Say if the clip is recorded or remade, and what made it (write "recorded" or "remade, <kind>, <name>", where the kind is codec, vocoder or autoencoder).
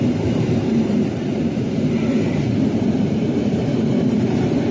remade, vocoder, BigVGAN v2